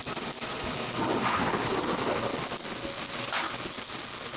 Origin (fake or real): real